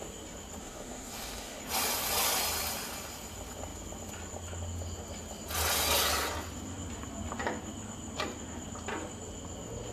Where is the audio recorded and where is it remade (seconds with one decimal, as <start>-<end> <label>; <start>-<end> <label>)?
0.0-0.6 recorded; 0.6-1.6 remade; 1.6-9.9 recorded